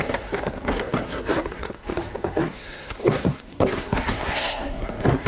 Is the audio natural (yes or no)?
no